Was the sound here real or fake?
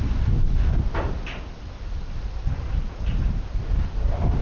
real